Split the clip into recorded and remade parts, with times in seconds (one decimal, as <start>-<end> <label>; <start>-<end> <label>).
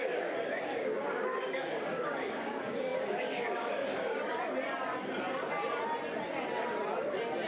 0.0-4.2 remade; 4.2-7.5 recorded